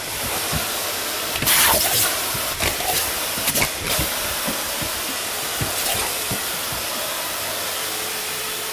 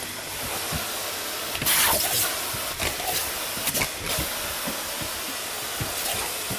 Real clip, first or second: second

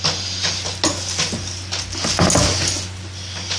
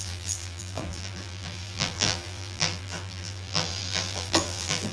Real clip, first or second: first